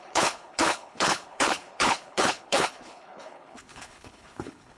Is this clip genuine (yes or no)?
no